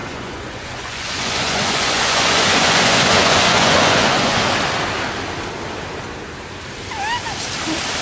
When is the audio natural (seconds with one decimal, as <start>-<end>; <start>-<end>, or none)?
4.4-8.0